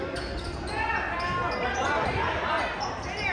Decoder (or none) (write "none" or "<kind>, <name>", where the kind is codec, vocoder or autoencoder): none